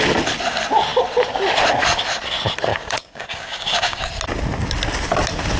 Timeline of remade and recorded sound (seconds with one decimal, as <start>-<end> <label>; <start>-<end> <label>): 0.0-2.7 recorded; 2.7-4.1 remade; 4.1-5.6 recorded